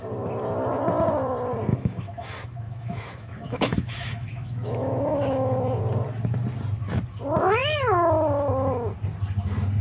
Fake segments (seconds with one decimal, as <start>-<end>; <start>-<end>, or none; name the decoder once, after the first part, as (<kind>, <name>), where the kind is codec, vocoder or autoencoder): 1.7-5.8 (autoencoder, DAC-VAE)